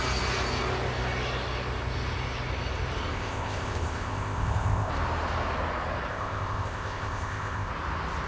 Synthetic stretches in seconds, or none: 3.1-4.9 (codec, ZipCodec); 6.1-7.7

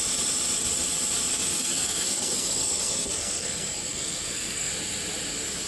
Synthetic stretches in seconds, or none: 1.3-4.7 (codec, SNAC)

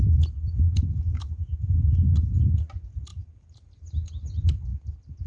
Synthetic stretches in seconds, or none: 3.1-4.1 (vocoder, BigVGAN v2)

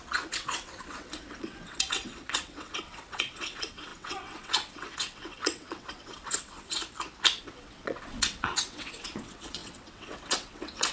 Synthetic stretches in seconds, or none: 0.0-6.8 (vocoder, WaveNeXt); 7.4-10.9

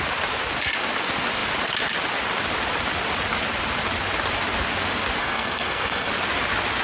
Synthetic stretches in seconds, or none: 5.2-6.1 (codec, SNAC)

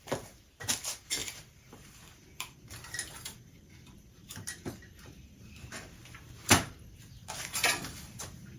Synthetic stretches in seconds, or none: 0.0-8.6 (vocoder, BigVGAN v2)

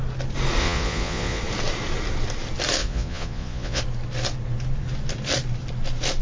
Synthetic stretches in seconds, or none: 0.6-1.4 (vocoder, Vocos); 2.8-3.8